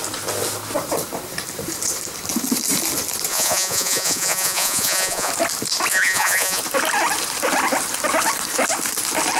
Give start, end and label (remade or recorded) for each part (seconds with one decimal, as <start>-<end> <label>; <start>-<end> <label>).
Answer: 0.0-3.3 recorded; 3.3-5.3 remade; 5.3-5.9 recorded; 5.9-6.6 remade; 6.6-9.4 recorded